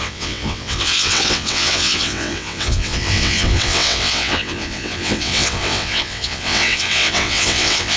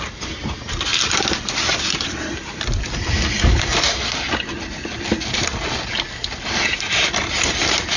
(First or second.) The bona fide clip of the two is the second